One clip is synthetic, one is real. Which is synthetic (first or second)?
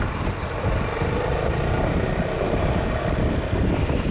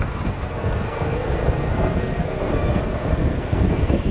second